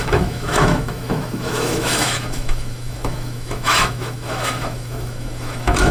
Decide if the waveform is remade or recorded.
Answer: remade